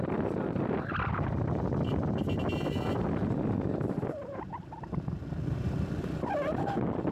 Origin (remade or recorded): recorded